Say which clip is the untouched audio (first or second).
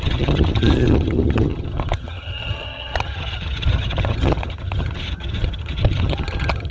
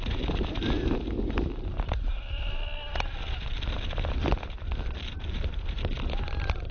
second